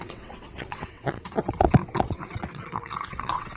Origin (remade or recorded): remade